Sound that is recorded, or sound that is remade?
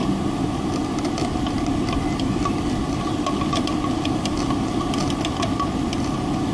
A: recorded